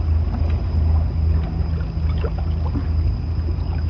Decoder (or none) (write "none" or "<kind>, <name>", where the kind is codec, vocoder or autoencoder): none